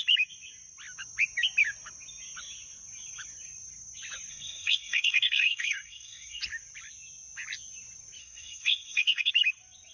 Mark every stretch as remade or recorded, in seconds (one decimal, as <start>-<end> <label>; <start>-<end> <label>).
0.0-4.3 recorded; 4.3-6.4 remade; 6.4-8.2 recorded; 8.2-9.3 remade; 9.3-9.9 recorded